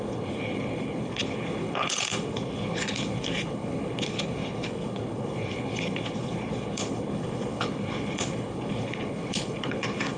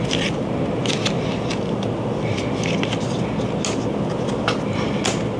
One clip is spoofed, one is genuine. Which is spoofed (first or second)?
first